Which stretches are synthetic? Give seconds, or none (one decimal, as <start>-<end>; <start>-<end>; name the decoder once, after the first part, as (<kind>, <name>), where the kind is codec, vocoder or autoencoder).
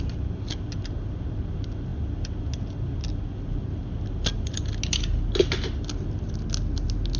none